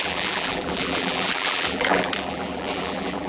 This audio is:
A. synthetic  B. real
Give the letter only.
A